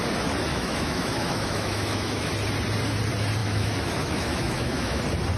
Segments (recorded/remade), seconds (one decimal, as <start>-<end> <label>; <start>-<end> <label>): 0.0-0.5 recorded; 0.5-2.3 remade; 2.3-3.4 recorded; 3.4-5.0 remade; 5.0-5.4 recorded